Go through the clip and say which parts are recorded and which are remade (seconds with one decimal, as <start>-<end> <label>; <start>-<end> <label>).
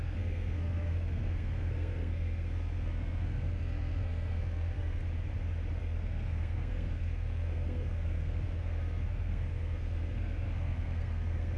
0.0-5.0 remade; 5.0-5.8 recorded; 5.8-11.6 remade